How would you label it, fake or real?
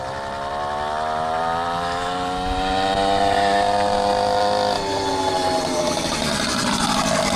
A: real